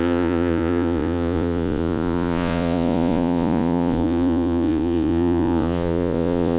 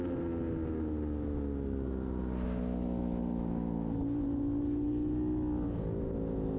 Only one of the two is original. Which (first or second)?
second